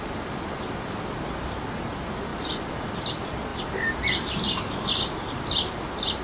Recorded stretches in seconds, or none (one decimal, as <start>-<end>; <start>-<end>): 0.0-6.2